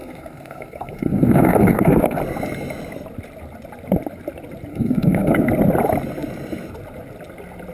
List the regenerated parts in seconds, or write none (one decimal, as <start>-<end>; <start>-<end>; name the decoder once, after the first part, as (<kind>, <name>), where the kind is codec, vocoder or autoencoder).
0.0-2.2 (codec, SNAC); 4.7-5.5